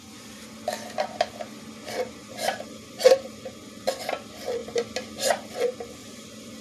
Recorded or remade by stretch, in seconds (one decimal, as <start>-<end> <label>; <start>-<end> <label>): 0.0-2.2 recorded; 2.2-3.4 remade; 3.4-6.0 recorded; 6.0-6.6 remade